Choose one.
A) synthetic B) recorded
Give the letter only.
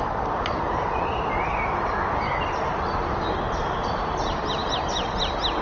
B